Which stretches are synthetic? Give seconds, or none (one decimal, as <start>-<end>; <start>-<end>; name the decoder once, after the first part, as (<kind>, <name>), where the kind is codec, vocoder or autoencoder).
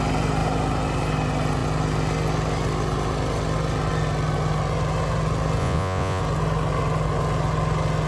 5.6-6.2 (vocoder, Vocos)